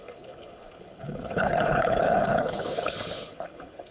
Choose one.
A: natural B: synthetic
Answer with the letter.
B